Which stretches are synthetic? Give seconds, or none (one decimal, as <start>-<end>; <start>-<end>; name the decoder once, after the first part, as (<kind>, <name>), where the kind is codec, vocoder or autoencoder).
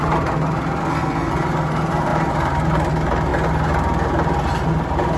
0.8-1.3 (codec, SNAC)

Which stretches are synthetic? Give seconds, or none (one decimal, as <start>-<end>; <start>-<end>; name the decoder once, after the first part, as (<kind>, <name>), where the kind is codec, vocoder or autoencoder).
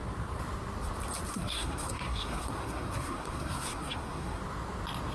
1.3-4.4 (codec, SNAC)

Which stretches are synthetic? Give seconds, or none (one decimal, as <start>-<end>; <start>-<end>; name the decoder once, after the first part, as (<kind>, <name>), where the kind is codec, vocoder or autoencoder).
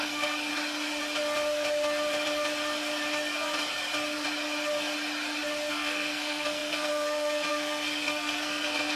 0.0-0.5 (codec, SNAC); 5.7-9.0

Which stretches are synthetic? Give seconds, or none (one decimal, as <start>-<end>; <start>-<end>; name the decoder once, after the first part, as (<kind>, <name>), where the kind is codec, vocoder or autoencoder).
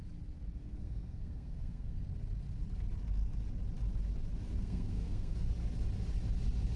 0.6-2.0 (codec, SNAC); 4.6-5.5